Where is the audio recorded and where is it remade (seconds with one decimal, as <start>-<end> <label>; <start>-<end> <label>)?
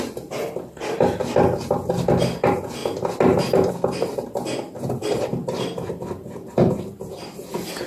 0.0-7.9 recorded